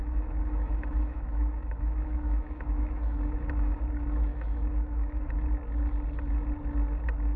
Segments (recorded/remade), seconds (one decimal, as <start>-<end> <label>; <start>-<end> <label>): 0.0-3.8 remade; 3.8-4.3 recorded; 4.3-5.3 remade; 5.3-7.4 recorded